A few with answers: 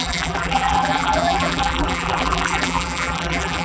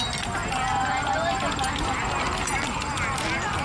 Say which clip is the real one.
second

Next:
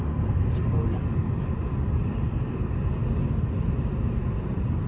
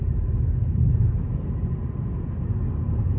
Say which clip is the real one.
second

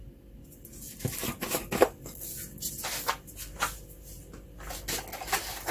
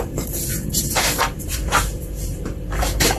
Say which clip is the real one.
first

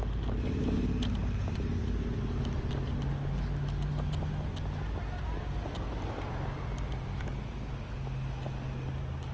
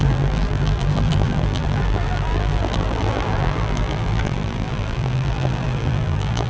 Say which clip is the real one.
first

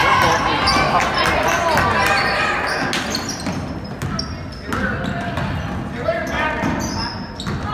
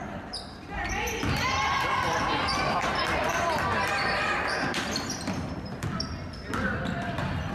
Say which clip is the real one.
first